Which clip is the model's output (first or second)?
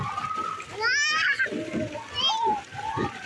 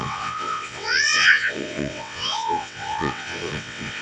second